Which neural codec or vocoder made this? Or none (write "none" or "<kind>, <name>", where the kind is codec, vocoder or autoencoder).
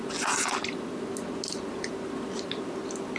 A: none